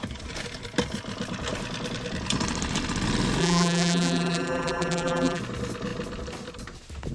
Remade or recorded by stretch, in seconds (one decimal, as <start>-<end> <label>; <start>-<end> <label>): 0.0-3.4 recorded; 3.4-5.4 remade; 5.4-7.1 recorded